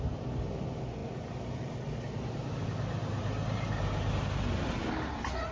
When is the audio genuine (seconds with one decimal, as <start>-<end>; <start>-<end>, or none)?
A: 0.0-5.5